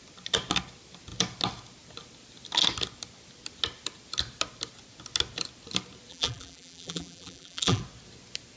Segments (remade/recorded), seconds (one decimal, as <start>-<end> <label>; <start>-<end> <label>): 0.0-6.1 recorded; 6.1-7.8 remade; 7.8-8.6 recorded